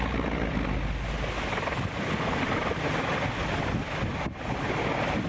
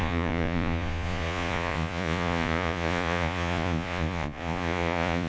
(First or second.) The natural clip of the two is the first